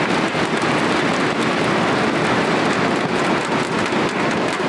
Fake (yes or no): no